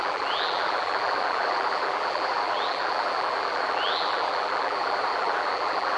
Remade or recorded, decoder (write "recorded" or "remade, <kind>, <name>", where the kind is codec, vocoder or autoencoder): remade, vocoder, BigVGAN v2